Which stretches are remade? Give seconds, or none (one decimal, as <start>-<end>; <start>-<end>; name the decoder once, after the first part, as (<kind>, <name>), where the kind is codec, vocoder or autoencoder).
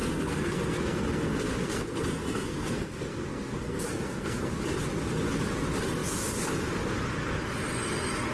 0.0-4.6 (codec, SNAC)